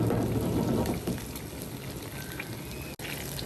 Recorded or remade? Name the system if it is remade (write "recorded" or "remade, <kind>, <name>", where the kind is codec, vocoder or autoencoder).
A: recorded